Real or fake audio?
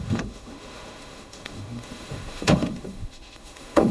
fake